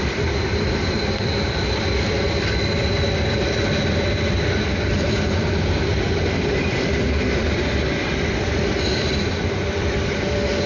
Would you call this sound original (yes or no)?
no